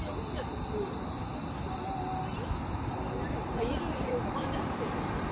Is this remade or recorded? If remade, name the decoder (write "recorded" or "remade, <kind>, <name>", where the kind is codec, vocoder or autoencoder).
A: recorded